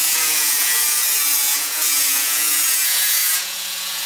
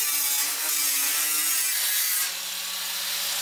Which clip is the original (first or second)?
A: second